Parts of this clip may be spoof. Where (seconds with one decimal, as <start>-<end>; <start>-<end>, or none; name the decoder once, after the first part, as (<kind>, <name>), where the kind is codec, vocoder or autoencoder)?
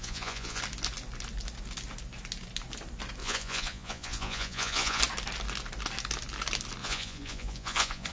0.0-0.6 (vocoder, Vocos); 3.2-5.0; 6.8-8.1